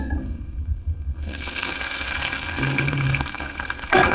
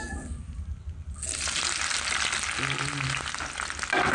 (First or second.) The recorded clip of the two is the second